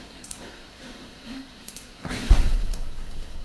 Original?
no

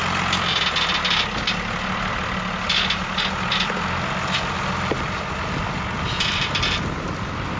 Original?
yes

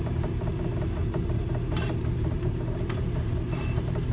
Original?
no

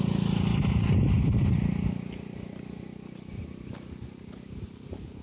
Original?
yes